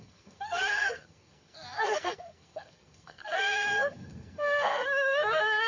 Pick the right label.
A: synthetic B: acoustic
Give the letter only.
A